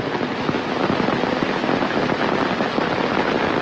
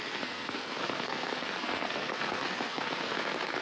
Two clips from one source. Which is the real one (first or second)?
first